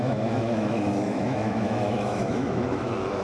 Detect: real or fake fake